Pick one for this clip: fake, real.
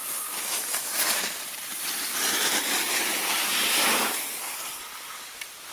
real